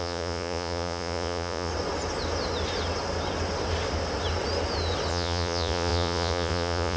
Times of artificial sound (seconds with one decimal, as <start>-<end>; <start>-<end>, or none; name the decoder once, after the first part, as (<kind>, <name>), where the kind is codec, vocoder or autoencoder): 0.0-1.7 (vocoder, Vocos); 5.1-7.0